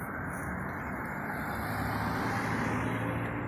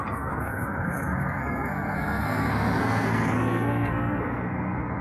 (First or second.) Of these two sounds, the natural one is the first